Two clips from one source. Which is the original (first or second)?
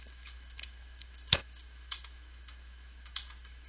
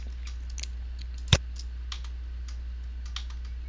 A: second